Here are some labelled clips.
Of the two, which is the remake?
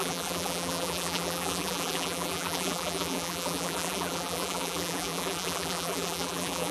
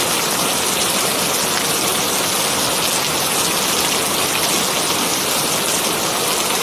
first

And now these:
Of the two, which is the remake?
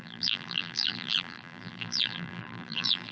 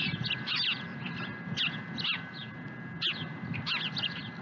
first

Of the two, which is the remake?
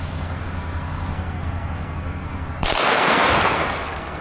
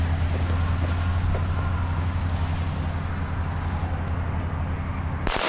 first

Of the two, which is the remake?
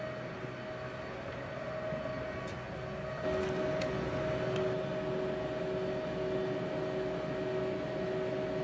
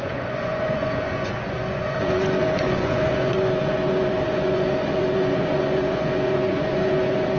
second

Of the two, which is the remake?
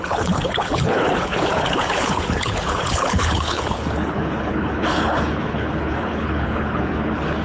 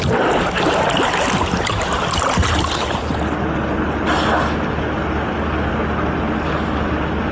first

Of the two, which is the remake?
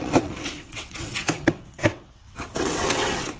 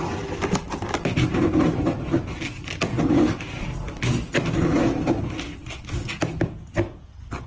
first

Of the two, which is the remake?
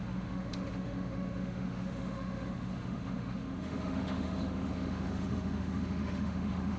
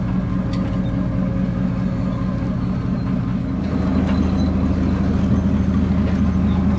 first